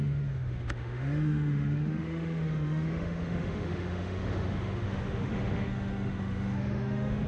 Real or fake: fake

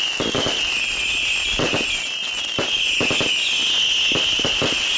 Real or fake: real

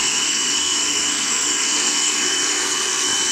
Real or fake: fake